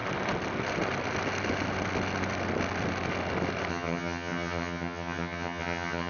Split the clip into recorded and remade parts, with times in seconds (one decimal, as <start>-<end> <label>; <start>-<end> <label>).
0.0-3.7 recorded; 3.7-6.1 remade